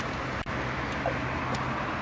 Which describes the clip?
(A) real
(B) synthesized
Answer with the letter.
A